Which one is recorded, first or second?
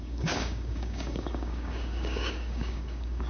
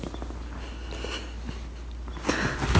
second